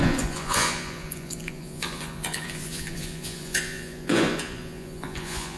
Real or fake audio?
fake